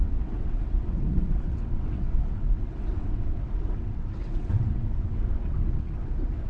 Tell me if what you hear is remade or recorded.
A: remade